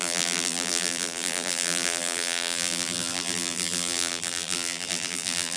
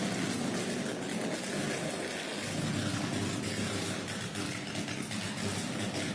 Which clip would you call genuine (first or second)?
second